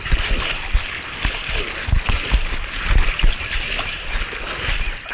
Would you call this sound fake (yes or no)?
no